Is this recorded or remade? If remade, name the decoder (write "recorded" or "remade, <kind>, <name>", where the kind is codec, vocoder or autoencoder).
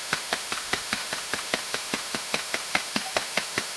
remade, autoencoder, DAC-VAE